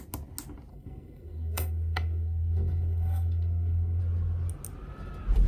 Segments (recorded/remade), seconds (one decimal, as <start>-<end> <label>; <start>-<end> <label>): 0.0-0.7 recorded; 0.7-4.0 remade; 4.0-5.5 recorded